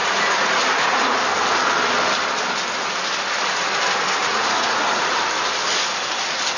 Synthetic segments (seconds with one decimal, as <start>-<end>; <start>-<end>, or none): 0.0-1.2; 4.2-5.2